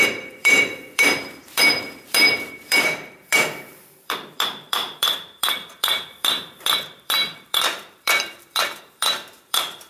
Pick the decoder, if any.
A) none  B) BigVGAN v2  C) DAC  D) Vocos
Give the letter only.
B